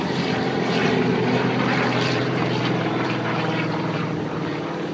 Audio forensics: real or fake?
fake